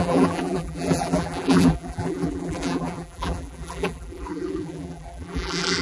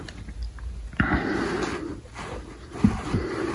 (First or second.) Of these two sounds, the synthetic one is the first